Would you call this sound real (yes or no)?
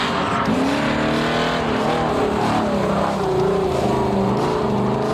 yes